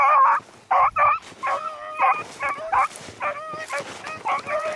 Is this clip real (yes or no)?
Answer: yes